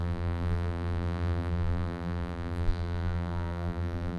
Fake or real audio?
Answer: fake